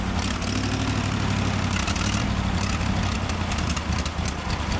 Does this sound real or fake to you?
real